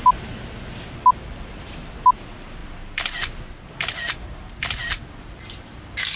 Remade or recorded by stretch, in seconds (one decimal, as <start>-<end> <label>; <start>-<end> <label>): 0.0-6.2 recorded

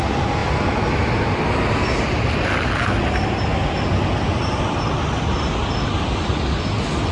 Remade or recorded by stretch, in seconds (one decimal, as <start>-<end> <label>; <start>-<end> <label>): 0.0-7.1 recorded